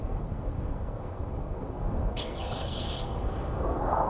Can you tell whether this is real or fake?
fake